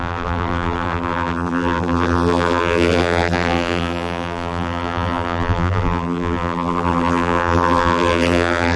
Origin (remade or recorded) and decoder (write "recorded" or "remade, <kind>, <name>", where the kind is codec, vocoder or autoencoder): remade, vocoder, BigVGAN v2